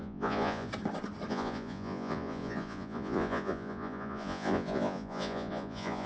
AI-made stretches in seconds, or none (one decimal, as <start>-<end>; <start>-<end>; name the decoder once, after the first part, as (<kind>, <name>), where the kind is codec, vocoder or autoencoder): 0.0-0.7 (vocoder, Vocos); 1.3-6.1